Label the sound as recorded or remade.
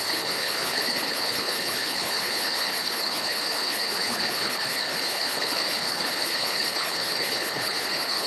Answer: remade